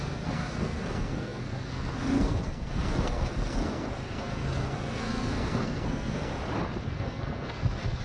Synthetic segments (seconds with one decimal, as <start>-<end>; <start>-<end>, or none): 0.0-6.3; 6.9-8.0